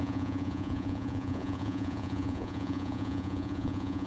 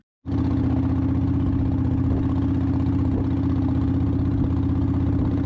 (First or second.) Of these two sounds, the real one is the second